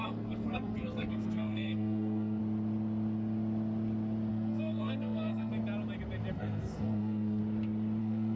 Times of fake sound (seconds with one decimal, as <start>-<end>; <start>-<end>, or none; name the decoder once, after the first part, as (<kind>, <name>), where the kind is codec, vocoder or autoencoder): 0.0-2.4 (codec, SNAC); 4.3-5.5; 6.3-7.4; 8.0-8.4